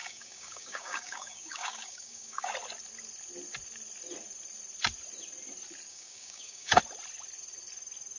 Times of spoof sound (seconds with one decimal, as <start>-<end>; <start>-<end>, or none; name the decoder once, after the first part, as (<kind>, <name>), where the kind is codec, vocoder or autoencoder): 0.0-2.5 (codec, DAC); 5.9-6.8